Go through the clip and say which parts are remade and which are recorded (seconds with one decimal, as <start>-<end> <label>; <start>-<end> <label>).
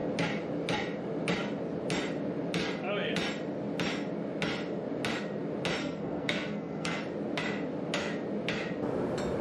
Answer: 0.0-5.8 recorded; 5.8-7.0 remade; 7.0-9.4 recorded